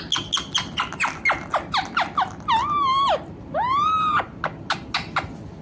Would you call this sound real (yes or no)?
yes